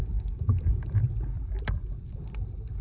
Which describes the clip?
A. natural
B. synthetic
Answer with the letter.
A